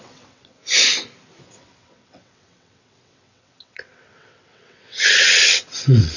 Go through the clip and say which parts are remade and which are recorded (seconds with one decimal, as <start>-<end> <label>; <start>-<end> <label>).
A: 0.0-0.6 remade; 0.6-1.4 recorded; 1.4-6.2 remade